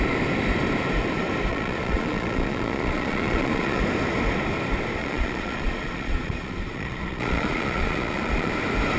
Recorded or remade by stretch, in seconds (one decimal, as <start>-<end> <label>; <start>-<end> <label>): 0.0-1.5 recorded; 1.5-3.8 remade; 3.8-5.0 recorded; 5.0-8.5 remade; 8.5-9.0 recorded

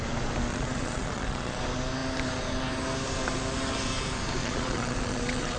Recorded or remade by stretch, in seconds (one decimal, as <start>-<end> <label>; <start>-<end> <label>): 0.0-0.5 recorded; 0.5-1.6 remade; 1.6-4.4 recorded; 4.4-5.6 remade

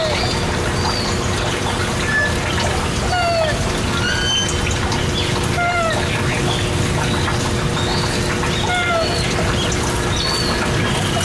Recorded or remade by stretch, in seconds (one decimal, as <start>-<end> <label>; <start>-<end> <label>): 0.0-11.2 recorded

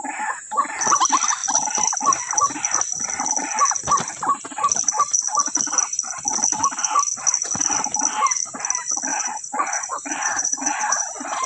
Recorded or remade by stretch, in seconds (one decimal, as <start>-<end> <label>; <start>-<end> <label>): 0.0-9.1 recorded; 9.1-11.5 remade

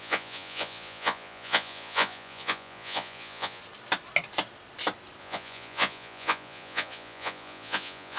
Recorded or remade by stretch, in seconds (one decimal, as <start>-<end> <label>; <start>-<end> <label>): 0.0-3.6 remade; 3.6-5.2 recorded; 5.2-8.2 remade